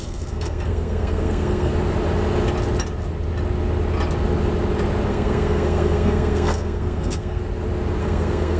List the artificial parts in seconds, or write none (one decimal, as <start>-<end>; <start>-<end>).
0.0-1.7; 5.1-7.4; 8.0-8.6